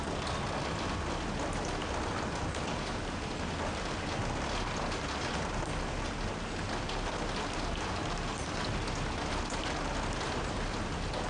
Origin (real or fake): real